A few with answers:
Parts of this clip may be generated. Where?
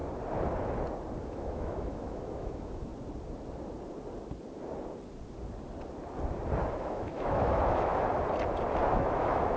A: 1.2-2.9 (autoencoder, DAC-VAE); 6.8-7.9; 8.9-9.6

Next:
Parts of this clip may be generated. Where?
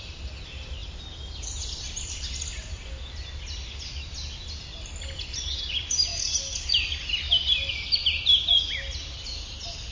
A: none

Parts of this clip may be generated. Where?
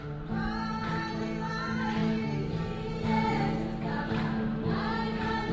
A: none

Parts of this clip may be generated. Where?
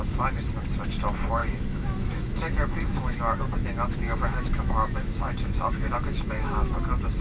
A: 1.4-3.2 (autoencoder, DAC-VAE); 3.6-6.7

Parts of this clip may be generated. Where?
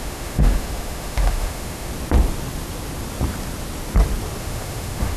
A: 0.0-1.9 (autoencoder, DAC-VAE); 4.4-5.2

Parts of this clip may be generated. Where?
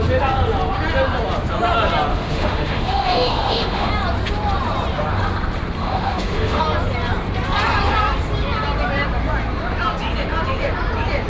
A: 2.1-3.9 (autoencoder, DAC-VAE); 5.8-6.6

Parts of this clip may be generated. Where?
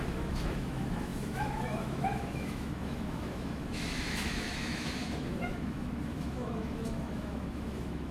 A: 0.0-8.1 (autoencoder, DAC-VAE)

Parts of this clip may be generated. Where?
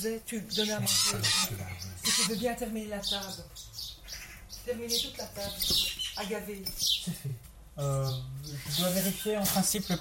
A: 8.5-9.1 (autoencoder, DAC-VAE)